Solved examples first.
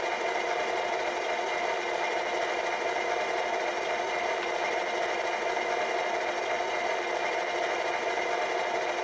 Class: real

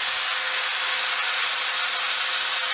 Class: real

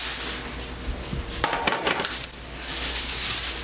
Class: real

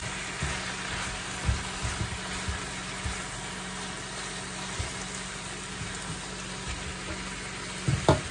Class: real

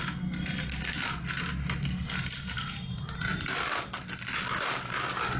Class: real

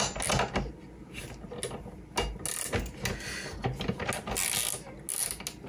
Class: real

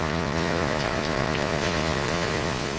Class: fake